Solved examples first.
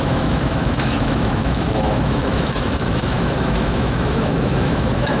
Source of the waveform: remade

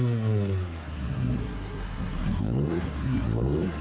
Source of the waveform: remade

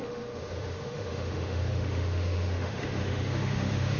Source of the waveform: remade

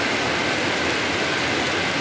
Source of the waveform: recorded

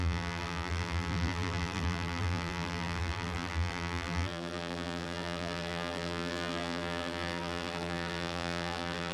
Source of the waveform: remade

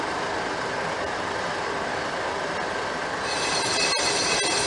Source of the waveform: remade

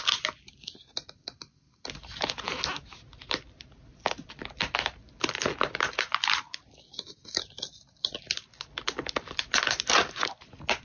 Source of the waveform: recorded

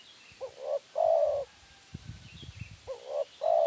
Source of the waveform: recorded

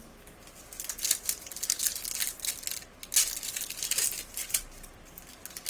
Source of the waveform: recorded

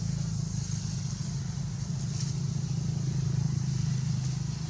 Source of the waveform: recorded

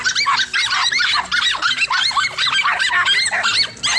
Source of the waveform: recorded